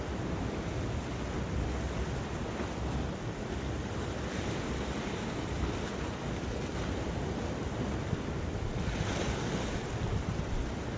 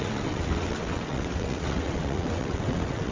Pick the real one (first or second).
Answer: first